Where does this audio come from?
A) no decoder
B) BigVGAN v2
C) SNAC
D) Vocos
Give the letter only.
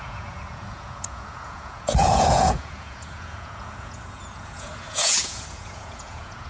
D